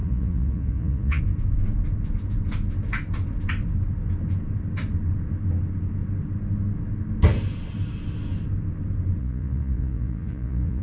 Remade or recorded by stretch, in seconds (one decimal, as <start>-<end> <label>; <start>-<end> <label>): 0.0-1.2 remade; 1.2-9.2 recorded; 9.2-10.8 remade